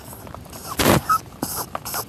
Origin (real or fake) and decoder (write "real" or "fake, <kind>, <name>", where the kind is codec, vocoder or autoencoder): real